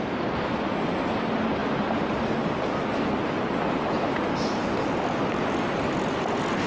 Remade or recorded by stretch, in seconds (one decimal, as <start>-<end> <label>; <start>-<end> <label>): 0.0-6.7 recorded